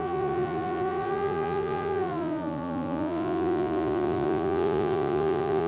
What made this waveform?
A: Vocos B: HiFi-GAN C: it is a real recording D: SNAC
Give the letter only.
A